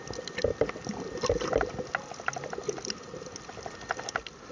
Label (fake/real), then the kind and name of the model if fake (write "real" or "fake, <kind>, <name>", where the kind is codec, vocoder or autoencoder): real